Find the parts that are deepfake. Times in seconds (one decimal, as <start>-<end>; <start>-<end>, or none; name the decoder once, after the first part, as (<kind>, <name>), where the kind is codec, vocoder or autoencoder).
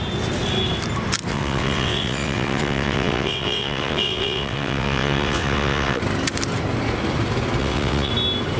1.3-6.0 (vocoder, WaveNeXt); 7.6-8.1